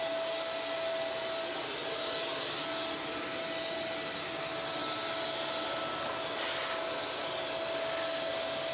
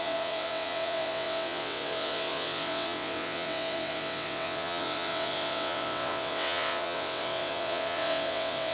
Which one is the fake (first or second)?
second